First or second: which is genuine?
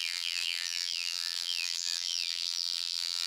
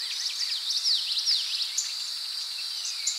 second